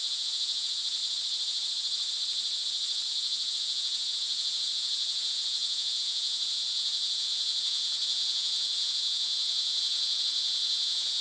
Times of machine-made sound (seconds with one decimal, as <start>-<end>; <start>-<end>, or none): 0.0-1.0; 3.1-11.2